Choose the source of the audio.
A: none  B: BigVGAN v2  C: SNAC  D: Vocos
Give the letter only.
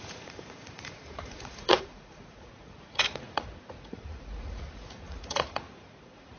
D